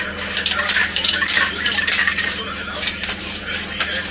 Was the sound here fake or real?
fake